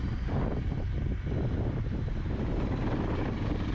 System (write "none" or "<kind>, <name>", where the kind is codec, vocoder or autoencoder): none